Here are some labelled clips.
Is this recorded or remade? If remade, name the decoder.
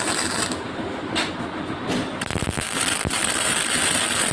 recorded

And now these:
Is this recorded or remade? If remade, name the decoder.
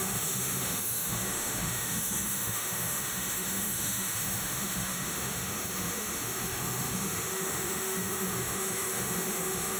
remade, autoencoder, DAC-VAE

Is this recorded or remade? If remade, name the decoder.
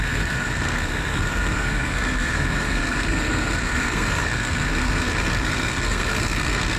remade, codec, SNAC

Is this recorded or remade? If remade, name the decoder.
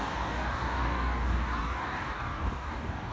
remade, codec, DAC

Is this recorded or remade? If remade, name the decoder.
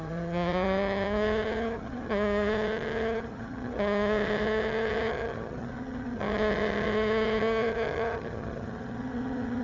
remade, vocoder, HiFi-GAN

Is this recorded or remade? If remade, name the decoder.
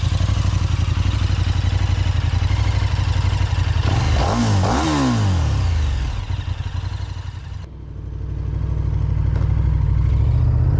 recorded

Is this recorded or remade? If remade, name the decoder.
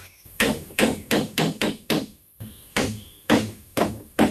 remade, autoencoder, DAC-VAE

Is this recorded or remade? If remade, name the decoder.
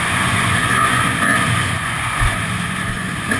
remade, vocoder, Vocos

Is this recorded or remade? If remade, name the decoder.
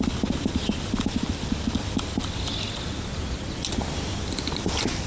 recorded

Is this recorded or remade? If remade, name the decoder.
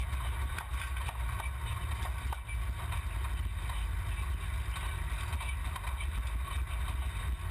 recorded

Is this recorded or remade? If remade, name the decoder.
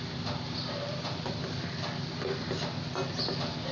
recorded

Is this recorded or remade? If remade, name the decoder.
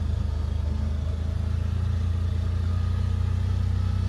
recorded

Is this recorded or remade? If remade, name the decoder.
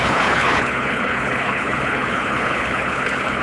remade, codec, HILCodec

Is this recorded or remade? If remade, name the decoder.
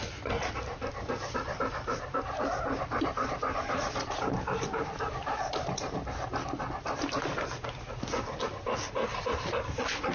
recorded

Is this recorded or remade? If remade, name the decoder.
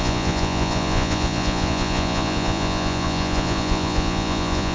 remade, vocoder, Vocos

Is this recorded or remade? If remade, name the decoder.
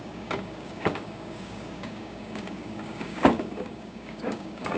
remade, codec, DAC